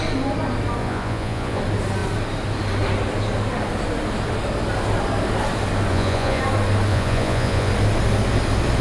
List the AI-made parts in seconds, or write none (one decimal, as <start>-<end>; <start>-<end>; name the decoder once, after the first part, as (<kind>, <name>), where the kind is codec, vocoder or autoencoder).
0.8-1.6 (vocoder, Vocos); 5.9-6.4; 6.9-7.7